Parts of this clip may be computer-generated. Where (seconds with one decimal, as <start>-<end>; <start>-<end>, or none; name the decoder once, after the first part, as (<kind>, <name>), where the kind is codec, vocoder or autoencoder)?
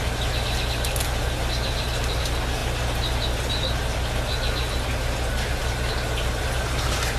none